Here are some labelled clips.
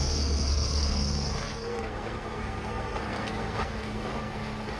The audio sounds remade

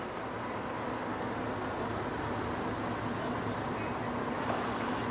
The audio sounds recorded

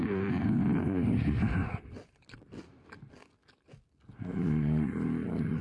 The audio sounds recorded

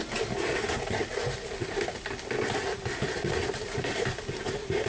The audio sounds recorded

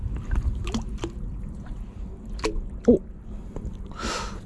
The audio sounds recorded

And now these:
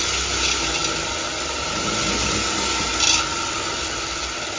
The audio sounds recorded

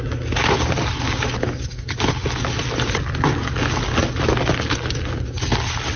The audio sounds recorded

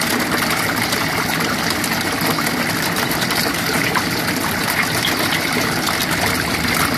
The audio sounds recorded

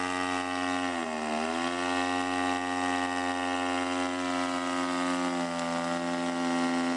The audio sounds recorded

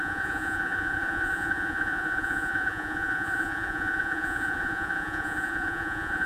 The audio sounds remade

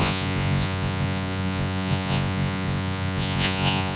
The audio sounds remade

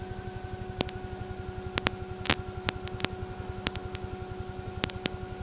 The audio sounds recorded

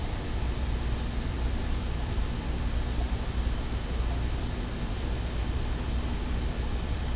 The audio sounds recorded